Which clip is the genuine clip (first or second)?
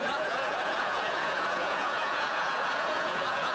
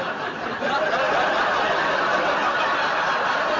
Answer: second